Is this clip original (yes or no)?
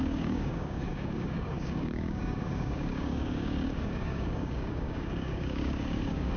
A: no